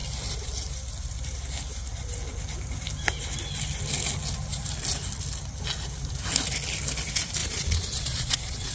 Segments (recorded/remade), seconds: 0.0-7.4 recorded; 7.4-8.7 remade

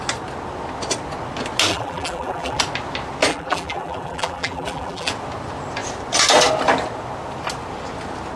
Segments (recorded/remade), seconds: 0.0-1.7 recorded; 1.7-2.6 remade; 2.6-3.3 recorded; 3.3-5.1 remade; 5.1-8.4 recorded

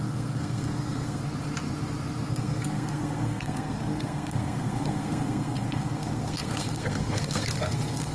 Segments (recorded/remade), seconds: 0.0-1.2 remade; 1.2-2.3 recorded; 2.3-8.1 remade

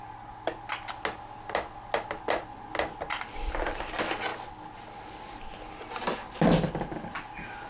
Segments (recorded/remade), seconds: 0.0-7.7 recorded

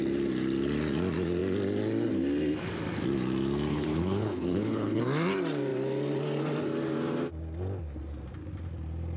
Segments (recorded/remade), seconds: 0.0-3.7 recorded; 3.7-5.0 remade; 5.0-9.2 recorded

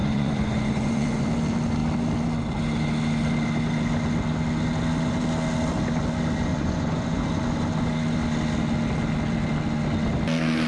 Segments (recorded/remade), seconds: 0.0-1.3 remade; 1.3-6.5 recorded; 6.5-7.2 remade; 7.2-10.7 recorded

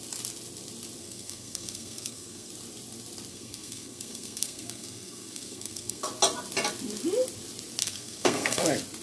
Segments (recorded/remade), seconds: 0.0-1.0 recorded; 1.0-2.5 remade; 2.5-3.3 recorded; 3.3-6.0 remade; 6.0-7.8 recorded; 7.8-8.6 remade; 8.6-9.0 recorded